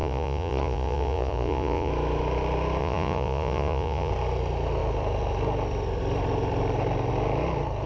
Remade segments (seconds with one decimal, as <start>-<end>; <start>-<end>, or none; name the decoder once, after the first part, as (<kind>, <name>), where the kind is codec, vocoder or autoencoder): 0.0-1.9 (vocoder, Vocos); 2.8-4.1